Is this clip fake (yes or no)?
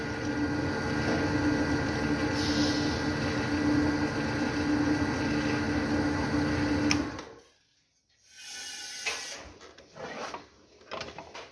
no